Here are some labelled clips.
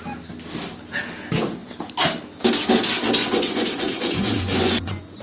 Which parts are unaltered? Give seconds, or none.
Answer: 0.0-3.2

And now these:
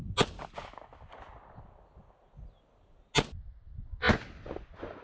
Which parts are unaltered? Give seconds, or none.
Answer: 0.0-5.0